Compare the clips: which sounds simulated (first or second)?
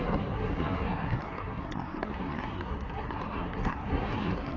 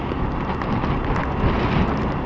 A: first